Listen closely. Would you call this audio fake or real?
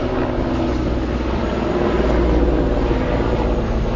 real